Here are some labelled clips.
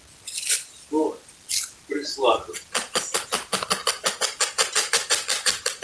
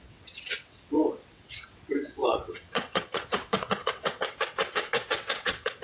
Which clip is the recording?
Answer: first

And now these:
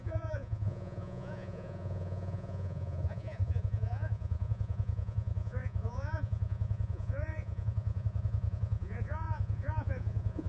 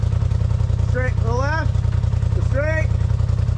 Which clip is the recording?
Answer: second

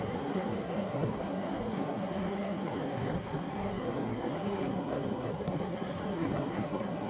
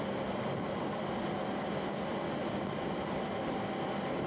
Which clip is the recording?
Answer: second